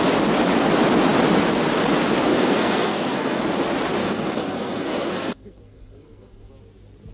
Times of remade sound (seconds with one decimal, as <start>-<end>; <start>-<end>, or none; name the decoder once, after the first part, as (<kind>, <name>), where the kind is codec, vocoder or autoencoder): 2.3-3.4 (codec, SNAC); 4.0-6.5